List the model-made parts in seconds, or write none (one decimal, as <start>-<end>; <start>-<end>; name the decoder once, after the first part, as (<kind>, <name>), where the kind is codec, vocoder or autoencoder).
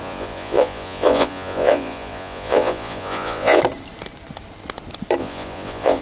0.0-3.6 (vocoder, Vocos); 5.2-6.0